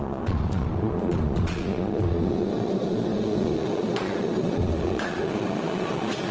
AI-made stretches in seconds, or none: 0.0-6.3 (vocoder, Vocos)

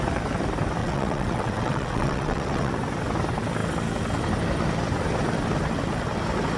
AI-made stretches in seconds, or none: 0.8-2.7 (vocoder, WaveNeXt)

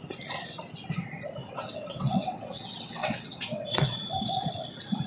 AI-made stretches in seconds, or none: 1.4-4.5 (vocoder, WaveNeXt)

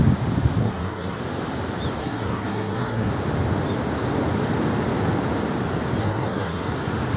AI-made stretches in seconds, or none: 0.6-1.2 (codec, SNAC); 2.0-3.1; 6.0-6.7

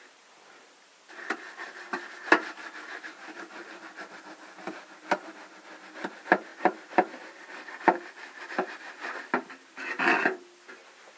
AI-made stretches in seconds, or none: none

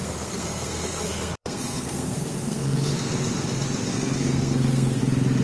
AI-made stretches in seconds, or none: 0.0-2.9 (codec, SNAC); 3.9-5.0

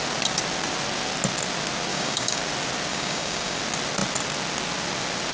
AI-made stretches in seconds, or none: 1.9-2.4 (codec, DAC); 2.9-3.6

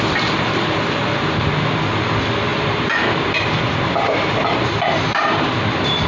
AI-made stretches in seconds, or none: 2.5-6.1 (vocoder, BigVGAN v2)